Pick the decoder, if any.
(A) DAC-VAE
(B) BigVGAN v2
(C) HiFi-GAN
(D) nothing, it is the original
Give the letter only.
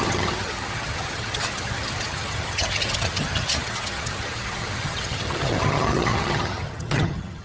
C